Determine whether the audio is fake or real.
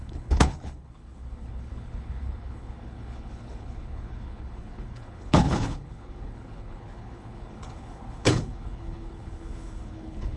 fake